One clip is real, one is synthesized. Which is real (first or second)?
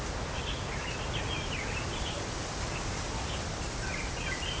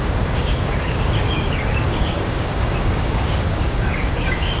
first